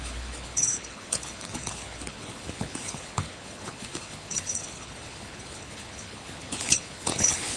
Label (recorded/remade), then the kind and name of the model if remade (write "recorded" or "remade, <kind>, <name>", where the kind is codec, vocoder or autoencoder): remade, codec, HILCodec